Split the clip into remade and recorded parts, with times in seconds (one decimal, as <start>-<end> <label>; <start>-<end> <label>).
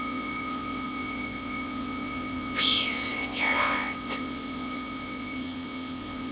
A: 0.0-6.3 remade